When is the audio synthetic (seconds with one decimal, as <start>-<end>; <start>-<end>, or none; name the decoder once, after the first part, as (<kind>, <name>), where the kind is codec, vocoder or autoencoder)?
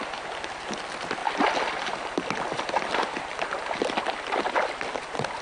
none